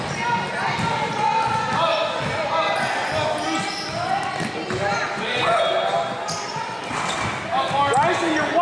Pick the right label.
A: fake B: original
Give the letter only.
B